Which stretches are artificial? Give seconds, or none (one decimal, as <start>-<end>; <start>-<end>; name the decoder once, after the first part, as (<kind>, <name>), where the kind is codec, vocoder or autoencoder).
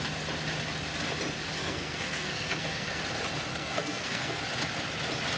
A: 1.6-3.0 (codec, SNAC); 3.5-4.4